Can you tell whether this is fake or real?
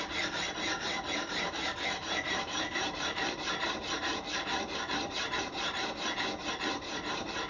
fake